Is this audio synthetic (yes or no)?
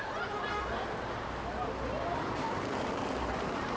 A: no